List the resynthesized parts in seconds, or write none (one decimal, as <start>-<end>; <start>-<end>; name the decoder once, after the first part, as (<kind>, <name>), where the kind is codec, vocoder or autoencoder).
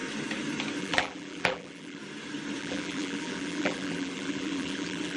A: 0.8-2.0 (vocoder, BigVGAN v2); 2.6-5.2